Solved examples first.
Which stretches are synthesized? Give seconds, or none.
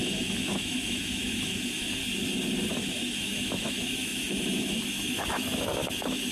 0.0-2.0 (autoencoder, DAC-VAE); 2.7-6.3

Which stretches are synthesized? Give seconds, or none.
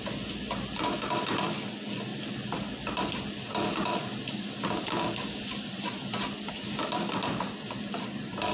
none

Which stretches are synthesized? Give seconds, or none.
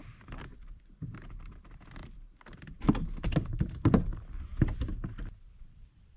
0.0-4.1 (vocoder, BigVGAN v2); 4.6-6.2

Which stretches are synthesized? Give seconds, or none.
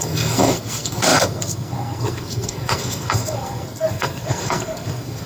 0.0-5.3 (codec, SNAC)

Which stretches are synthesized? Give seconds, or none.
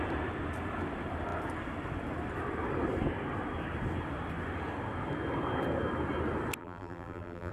6.6-7.5 (vocoder, BigVGAN v2)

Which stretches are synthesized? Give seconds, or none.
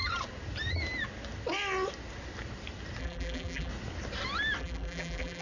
3.0-3.7 (vocoder, BigVGAN v2); 4.6-5.4